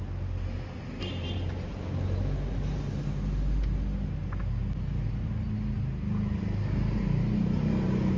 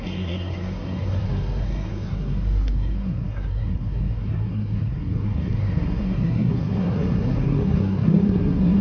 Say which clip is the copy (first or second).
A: second